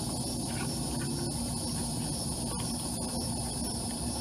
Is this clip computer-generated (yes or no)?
no